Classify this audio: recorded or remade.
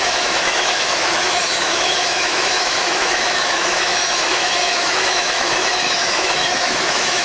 remade